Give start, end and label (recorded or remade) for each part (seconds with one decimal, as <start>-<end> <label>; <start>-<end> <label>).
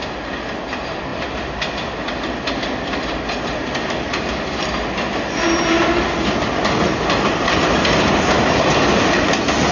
0.0-9.7 recorded